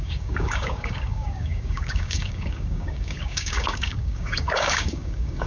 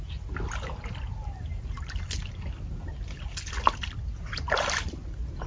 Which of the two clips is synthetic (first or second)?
first